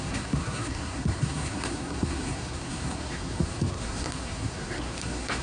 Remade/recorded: remade